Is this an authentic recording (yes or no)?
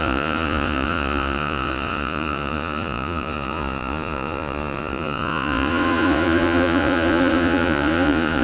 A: no